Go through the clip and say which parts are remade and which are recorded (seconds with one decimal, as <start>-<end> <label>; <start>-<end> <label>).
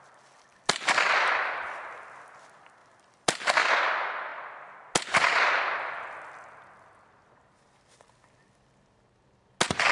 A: 0.0-0.5 recorded; 0.5-1.5 remade; 1.5-2.8 recorded; 2.8-3.7 remade; 3.7-4.3 recorded; 4.3-4.9 remade; 4.9-9.9 recorded